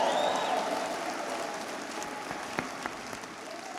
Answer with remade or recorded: recorded